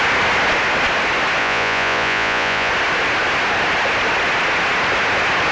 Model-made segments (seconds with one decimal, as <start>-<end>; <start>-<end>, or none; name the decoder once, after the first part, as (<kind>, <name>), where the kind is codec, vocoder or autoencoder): 1.4-2.7 (vocoder, Vocos)